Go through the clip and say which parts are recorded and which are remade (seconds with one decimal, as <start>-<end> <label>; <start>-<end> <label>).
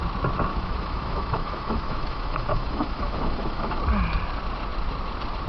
0.0-0.5 recorded; 0.5-3.8 remade; 3.8-5.5 recorded